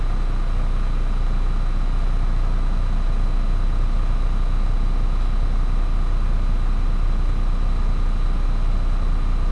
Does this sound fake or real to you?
real